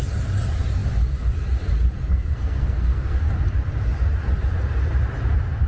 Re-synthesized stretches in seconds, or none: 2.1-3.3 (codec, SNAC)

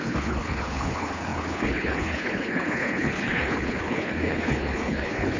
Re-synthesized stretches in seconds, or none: 0.0-5.4 (codec, HILCodec)

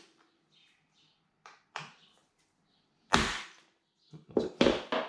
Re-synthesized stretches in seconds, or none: 0.0-5.1 (vocoder, BigVGAN v2)

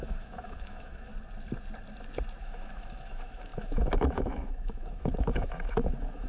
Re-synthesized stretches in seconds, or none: 0.0-1.1 (autoencoder, DAC-VAE); 2.4-6.3

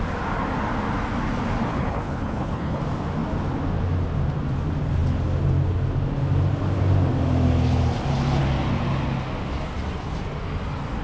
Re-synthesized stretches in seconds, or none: 1.7-2.8 (codec, HILCodec)